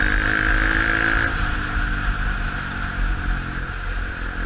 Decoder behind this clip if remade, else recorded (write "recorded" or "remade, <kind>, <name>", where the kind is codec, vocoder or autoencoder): recorded